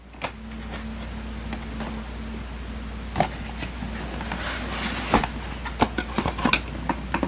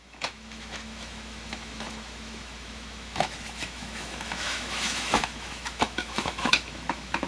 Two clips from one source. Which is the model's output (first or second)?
second